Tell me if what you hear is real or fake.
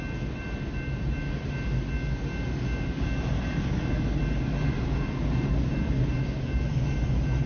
real